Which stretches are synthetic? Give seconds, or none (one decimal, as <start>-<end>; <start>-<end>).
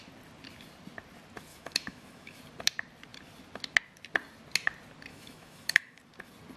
1.5-2.4; 5.1-6.0